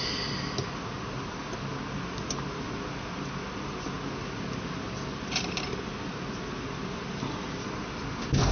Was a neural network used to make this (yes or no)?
no